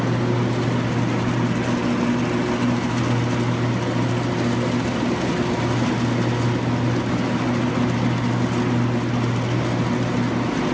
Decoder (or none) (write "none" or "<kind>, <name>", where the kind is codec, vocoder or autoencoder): none